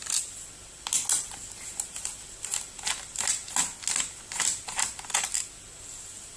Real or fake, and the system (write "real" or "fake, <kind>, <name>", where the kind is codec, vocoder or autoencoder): real